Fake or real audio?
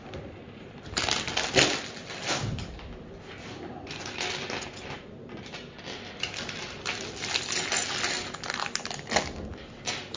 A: real